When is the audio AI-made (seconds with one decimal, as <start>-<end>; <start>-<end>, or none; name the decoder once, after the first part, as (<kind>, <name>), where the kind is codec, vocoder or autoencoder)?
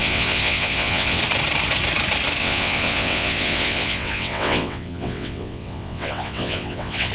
0.0-1.2 (vocoder, WaveNeXt); 2.4-7.1